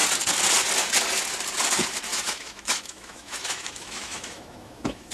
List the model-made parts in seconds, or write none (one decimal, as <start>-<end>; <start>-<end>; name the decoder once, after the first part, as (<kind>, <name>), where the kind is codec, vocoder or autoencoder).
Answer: 2.1-5.1 (autoencoder, DAC-VAE)